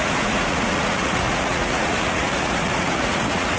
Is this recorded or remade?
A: remade